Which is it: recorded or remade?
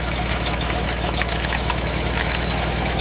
remade